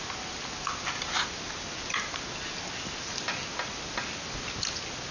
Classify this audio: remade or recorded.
recorded